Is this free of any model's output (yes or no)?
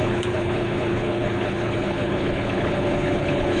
no